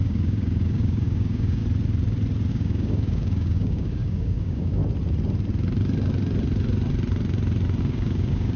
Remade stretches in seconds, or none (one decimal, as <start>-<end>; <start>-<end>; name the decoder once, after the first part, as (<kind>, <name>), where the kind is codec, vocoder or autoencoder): 0.0-1.6 (codec, DAC); 2.5-4.8; 7.8-8.6